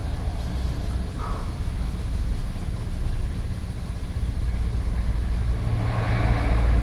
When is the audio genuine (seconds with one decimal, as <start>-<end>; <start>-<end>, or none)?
0.0-1.1; 2.4-5.8